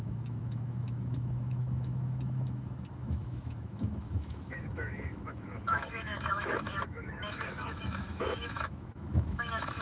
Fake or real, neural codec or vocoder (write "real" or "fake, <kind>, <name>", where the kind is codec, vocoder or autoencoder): fake, autoencoder, DAC-VAE